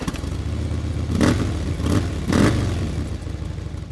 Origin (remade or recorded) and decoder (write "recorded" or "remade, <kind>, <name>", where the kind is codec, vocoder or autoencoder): recorded